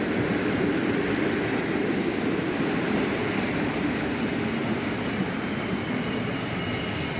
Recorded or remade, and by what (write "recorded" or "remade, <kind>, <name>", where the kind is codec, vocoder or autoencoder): remade, vocoder, BigVGAN v2